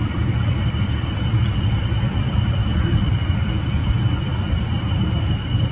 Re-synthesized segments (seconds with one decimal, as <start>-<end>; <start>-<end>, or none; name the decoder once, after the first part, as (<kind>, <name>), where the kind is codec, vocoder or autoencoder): 0.0-5.7 (vocoder, BigVGAN v2)